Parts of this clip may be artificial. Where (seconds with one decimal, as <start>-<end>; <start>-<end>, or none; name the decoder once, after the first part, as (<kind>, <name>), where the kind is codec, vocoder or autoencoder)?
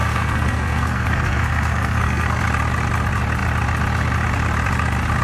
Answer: 0.0-2.4 (codec, SNAC)